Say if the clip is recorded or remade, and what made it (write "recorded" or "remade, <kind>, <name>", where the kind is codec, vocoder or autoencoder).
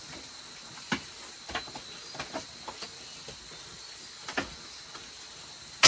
recorded